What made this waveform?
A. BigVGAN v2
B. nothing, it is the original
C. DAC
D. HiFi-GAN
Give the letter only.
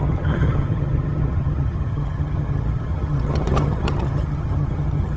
D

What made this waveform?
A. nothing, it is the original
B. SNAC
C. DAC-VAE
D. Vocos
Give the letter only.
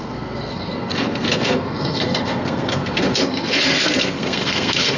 B